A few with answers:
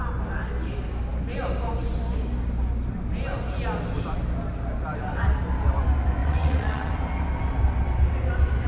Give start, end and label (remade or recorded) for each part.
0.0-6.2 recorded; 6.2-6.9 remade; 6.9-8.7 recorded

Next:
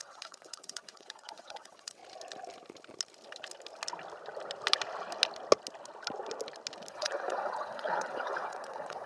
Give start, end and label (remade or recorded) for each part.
0.0-2.0 remade; 2.0-6.9 recorded; 6.9-9.1 remade

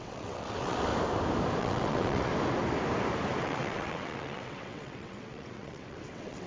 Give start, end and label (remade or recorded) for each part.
0.0-0.9 remade; 0.9-1.6 recorded; 1.6-2.3 remade; 2.3-3.4 recorded; 3.4-6.5 remade

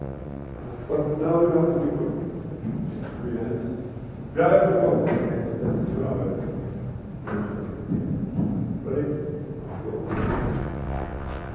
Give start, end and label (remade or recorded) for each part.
0.0-0.6 remade; 0.6-10.6 recorded; 10.6-11.5 remade

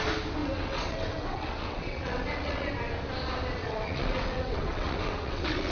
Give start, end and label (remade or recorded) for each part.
0.0-0.4 recorded; 0.4-2.7 remade; 2.7-3.6 recorded; 3.6-5.7 remade

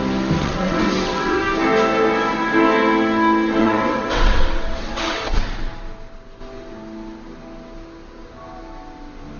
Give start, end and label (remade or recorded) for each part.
0.0-0.4 recorded; 0.4-1.4 remade; 1.4-3.6 recorded; 3.6-5.4 remade; 5.4-9.4 recorded

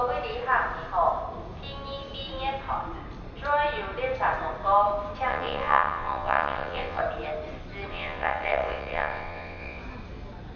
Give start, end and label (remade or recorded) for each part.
0.0-5.3 recorded; 5.3-7.0 remade; 7.0-7.9 recorded; 7.9-9.8 remade; 9.8-10.6 recorded

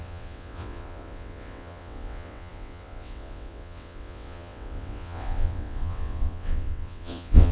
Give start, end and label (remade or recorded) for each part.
0.0-7.5 remade